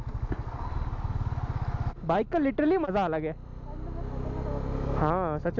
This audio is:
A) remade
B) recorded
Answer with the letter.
B